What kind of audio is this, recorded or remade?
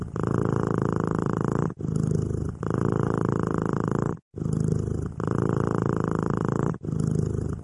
recorded